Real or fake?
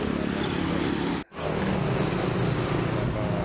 real